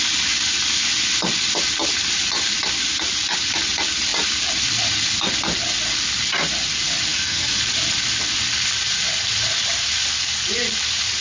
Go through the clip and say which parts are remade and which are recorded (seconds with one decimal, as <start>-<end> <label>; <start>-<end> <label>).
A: 0.0-7.1 recorded; 7.1-7.6 remade; 7.6-11.2 recorded